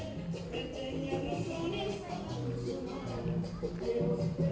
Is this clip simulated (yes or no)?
no